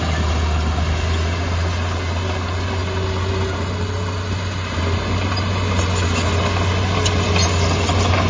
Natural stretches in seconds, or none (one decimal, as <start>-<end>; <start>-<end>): 0.0-8.3